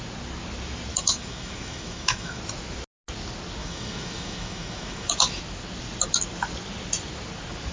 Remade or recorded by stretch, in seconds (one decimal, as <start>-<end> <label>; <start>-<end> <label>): 0.0-0.9 recorded; 0.9-2.4 remade; 2.4-3.6 recorded; 3.6-5.4 remade; 5.4-7.7 recorded